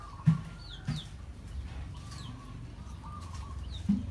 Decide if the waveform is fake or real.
real